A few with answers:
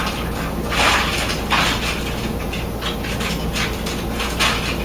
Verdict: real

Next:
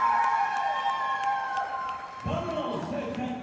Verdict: fake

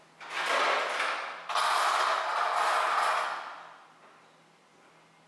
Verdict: real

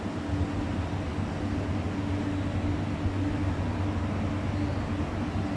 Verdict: real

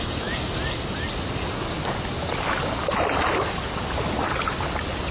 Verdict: real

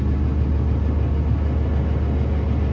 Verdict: real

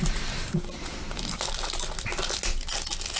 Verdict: real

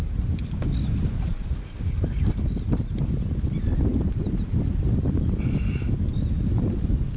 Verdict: real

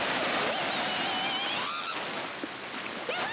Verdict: real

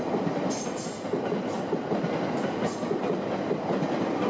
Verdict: real